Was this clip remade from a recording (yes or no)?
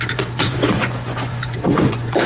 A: yes